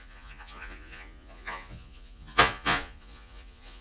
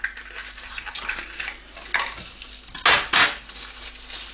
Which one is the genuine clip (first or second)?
second